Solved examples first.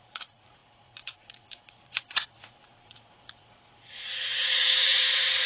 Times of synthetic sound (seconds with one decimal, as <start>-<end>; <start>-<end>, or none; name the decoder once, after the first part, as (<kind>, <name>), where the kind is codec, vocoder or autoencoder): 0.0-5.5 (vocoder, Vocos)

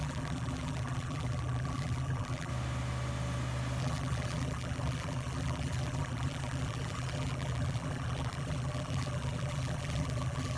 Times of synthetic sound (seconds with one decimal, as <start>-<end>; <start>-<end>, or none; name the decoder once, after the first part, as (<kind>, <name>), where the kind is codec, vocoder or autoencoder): 0.0-2.5 (vocoder, BigVGAN v2); 3.8-10.6

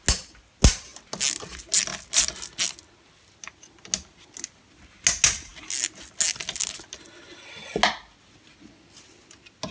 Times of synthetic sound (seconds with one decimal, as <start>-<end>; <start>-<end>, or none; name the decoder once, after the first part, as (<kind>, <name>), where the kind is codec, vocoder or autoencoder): none

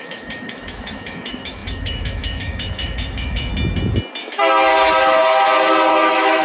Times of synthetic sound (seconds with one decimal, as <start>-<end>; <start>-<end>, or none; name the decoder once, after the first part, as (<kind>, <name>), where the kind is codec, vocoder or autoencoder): 0.0-3.5 (autoencoder, DAC-VAE); 4.2-4.7; 5.9-6.4

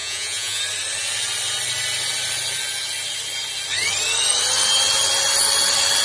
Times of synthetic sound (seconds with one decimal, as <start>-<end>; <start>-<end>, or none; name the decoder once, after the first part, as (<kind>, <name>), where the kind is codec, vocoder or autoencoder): 0.0-0.6 (vocoder, Vocos)